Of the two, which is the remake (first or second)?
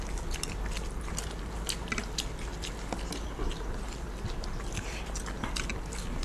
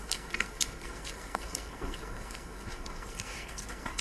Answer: second